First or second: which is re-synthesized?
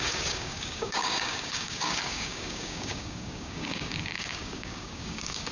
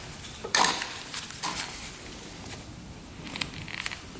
first